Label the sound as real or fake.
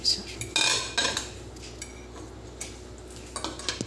real